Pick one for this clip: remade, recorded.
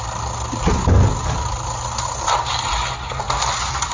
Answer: recorded